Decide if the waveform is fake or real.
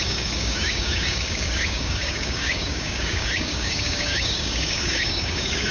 fake